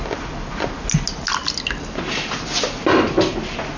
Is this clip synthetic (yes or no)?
no